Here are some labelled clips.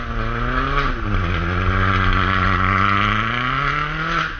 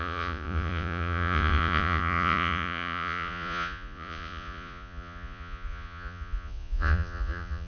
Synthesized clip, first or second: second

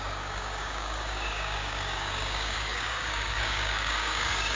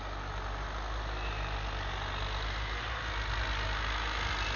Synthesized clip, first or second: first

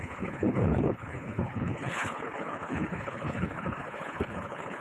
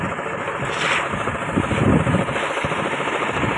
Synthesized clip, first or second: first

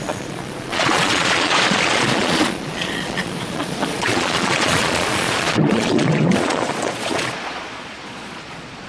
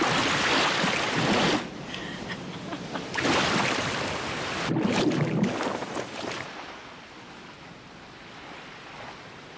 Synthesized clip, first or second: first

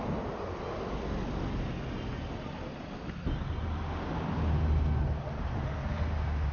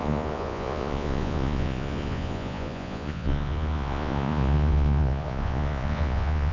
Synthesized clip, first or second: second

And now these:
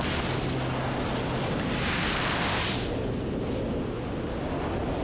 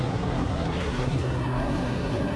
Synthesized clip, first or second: second